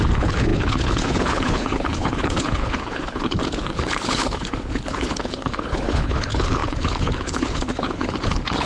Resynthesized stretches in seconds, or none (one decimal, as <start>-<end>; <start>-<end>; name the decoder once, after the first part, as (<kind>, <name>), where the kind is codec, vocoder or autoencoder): 0.0-8.7 (codec, HILCodec)